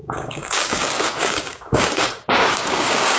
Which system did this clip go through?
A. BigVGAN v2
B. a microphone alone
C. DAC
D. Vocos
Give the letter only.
C